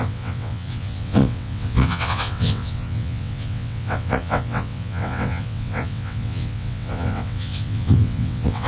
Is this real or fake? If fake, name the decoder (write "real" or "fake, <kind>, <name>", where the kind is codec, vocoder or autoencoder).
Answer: fake, vocoder, WaveNeXt